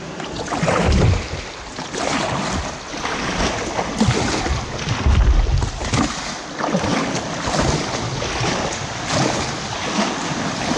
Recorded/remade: recorded